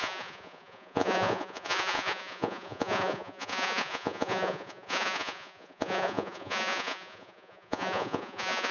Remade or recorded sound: remade